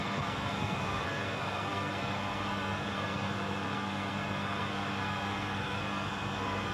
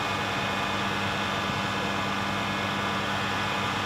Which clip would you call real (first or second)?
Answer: second